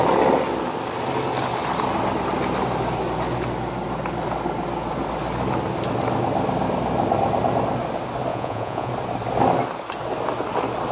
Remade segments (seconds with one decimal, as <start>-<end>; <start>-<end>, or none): 8.3-8.9